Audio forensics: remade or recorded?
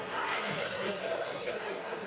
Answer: remade